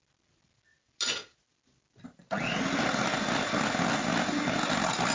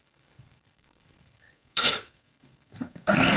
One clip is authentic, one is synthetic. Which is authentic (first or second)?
first